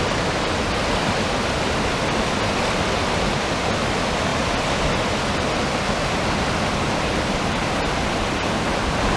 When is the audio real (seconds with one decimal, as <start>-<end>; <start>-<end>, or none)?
0.0-9.2